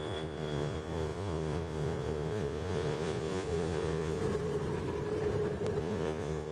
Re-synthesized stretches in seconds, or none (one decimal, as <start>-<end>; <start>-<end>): 0.0-4.2; 5.8-6.5